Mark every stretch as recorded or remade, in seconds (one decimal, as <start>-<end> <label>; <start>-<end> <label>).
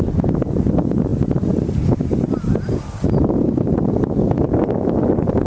0.0-5.5 recorded